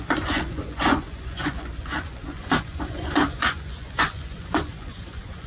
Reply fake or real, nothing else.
fake